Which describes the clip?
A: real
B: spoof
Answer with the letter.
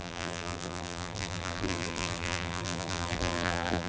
B